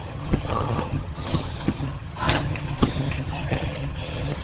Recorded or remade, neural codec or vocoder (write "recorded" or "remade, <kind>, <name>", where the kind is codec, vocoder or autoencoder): remade, vocoder, HiFi-GAN